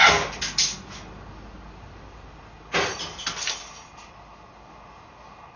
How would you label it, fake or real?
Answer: real